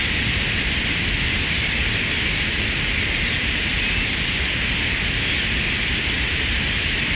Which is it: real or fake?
real